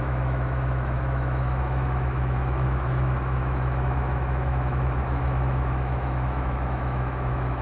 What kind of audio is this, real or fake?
fake